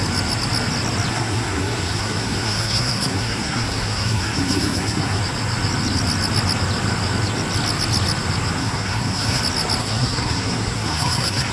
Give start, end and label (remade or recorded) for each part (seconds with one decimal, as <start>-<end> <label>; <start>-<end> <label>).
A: 0.0-1.1 recorded; 1.1-5.2 remade; 5.2-8.6 recorded; 8.6-9.4 remade; 9.4-9.8 recorded; 9.8-11.5 remade